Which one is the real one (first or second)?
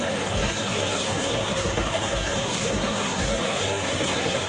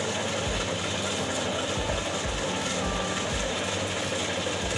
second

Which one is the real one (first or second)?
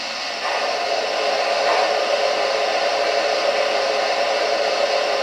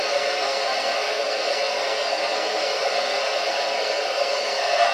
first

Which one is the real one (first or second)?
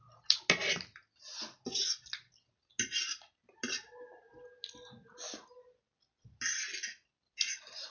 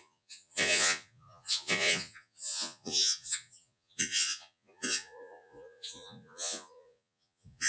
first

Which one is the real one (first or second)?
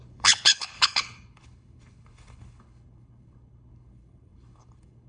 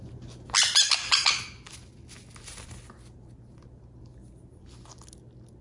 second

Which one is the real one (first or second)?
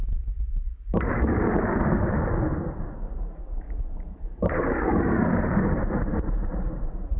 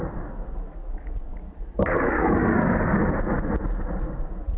second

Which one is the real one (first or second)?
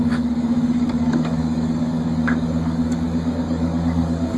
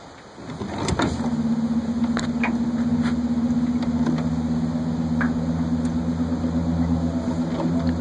second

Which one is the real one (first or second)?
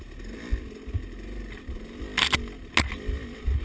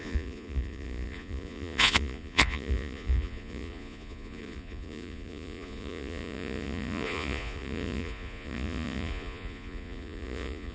first